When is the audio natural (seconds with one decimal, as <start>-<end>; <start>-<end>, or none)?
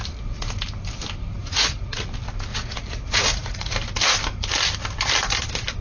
0.0-1.4; 2.0-2.5; 3.7-5.8